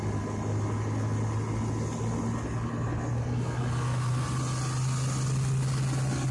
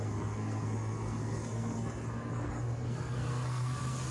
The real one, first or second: first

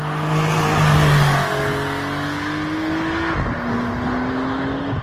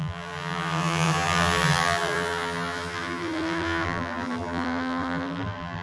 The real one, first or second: first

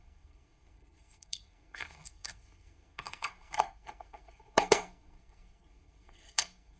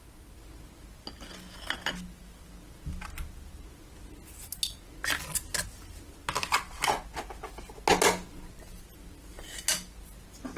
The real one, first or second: second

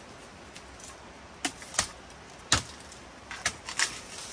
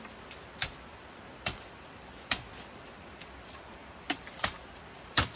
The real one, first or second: first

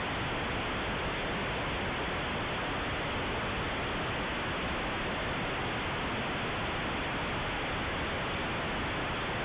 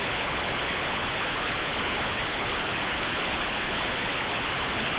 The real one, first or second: first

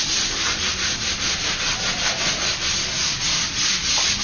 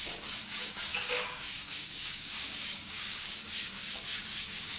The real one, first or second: first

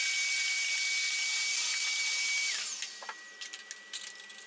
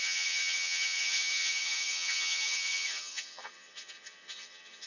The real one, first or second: first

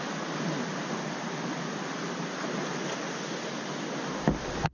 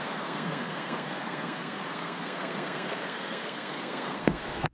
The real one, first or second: first